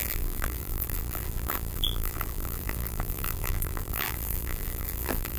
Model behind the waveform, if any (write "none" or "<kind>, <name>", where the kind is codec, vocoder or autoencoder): vocoder, BigVGAN v2